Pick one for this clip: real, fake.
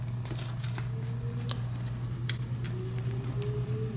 real